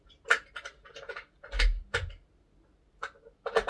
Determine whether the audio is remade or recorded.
recorded